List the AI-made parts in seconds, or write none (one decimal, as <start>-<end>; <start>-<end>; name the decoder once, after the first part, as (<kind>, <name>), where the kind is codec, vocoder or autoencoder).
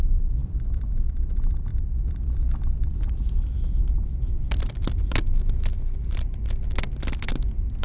1.7-6.4 (vocoder, BigVGAN v2)